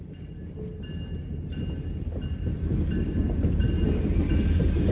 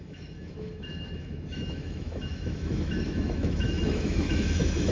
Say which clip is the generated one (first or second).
second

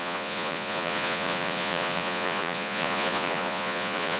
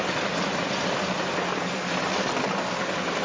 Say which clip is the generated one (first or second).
first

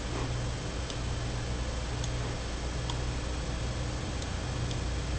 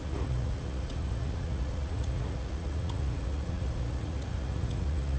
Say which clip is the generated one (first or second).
second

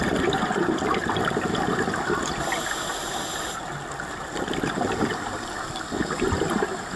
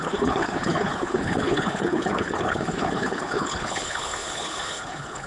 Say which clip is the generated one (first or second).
second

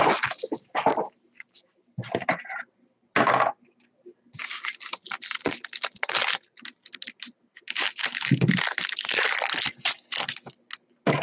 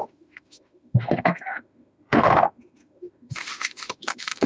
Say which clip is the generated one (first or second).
second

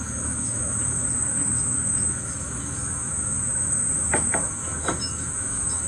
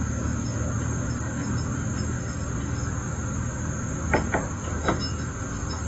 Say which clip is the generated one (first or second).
first